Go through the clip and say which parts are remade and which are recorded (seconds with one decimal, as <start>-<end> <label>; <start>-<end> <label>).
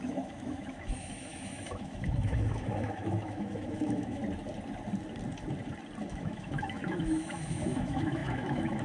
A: 0.0-4.2 remade; 4.2-6.1 recorded; 6.1-8.8 remade